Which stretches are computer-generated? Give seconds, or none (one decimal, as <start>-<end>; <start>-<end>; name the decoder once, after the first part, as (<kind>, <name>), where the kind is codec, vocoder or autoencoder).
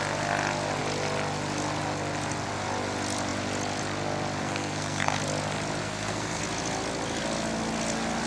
4.4-5.2 (codec, SNAC); 5.8-6.4